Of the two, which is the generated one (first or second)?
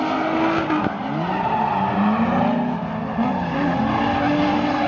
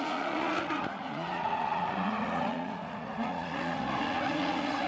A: second